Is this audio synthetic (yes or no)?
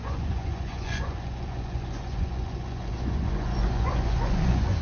yes